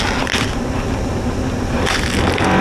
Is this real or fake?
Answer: real